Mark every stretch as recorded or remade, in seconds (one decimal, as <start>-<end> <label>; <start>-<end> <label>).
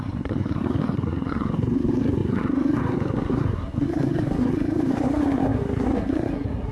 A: 0.0-6.7 remade